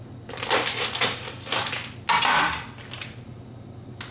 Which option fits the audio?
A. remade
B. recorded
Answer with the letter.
B